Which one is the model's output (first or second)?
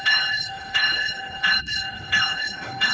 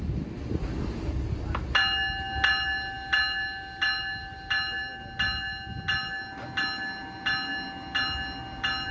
first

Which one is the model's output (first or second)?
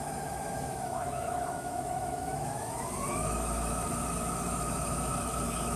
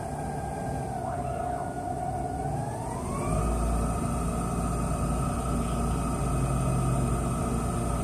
first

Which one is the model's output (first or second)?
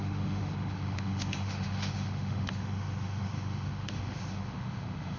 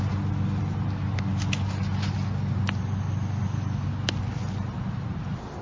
first